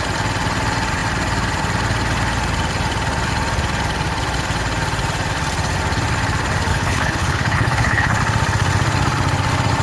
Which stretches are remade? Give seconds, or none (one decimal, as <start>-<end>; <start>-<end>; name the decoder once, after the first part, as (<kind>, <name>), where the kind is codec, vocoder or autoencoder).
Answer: 6.7-8.2 (codec, HILCodec)